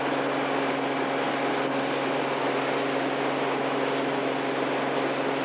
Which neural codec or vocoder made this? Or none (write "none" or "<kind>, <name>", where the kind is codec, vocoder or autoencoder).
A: none